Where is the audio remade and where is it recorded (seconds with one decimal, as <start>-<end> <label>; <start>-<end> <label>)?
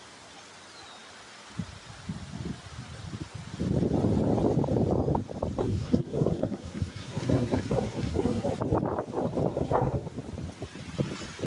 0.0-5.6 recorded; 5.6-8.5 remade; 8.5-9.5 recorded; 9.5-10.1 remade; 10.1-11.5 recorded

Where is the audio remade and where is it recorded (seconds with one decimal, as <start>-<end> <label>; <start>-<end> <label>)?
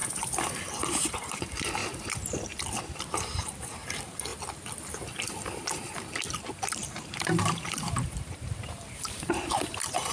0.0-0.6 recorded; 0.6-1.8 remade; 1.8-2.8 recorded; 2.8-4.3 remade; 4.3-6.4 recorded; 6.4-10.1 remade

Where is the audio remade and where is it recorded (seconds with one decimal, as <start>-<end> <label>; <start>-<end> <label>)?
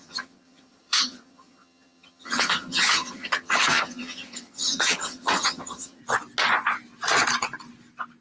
0.0-6.0 remade; 6.0-8.2 recorded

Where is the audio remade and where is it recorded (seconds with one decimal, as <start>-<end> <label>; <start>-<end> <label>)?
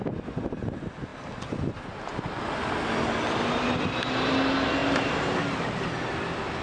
0.0-6.6 recorded